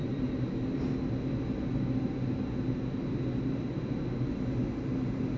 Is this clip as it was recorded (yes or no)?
yes